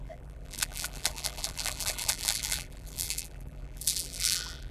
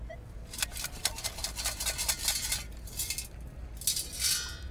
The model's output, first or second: first